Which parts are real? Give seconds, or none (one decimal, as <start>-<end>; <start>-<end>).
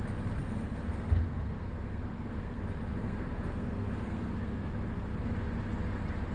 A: 0.0-0.4; 2.6-3.0; 4.7-6.3